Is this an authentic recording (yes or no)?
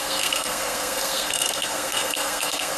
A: no